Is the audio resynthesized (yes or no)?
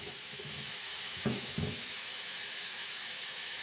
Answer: yes